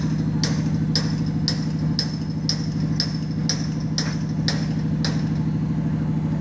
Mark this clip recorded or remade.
recorded